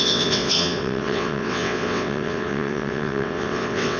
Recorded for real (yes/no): no